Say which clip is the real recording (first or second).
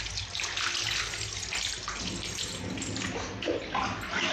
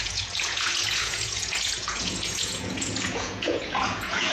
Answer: first